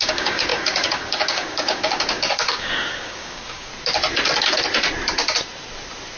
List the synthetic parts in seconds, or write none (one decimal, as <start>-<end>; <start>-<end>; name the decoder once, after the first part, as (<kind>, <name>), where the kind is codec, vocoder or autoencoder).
0.0-3.7 (codec, DAC)